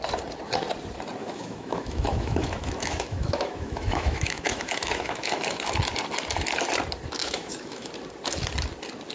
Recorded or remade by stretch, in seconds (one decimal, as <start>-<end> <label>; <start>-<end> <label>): 0.0-1.2 recorded; 1.2-5.7 remade; 5.7-7.2 recorded; 7.2-7.9 remade; 7.9-9.1 recorded